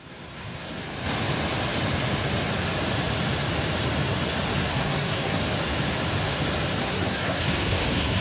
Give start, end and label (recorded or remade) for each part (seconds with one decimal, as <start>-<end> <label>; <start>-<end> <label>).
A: 0.0-0.8 remade; 0.8-4.6 recorded; 4.6-5.4 remade; 5.4-6.8 recorded; 6.8-8.2 remade